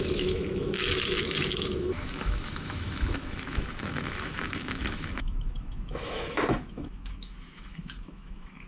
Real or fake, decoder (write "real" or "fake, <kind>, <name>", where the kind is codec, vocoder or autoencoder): fake, autoencoder, DAC-VAE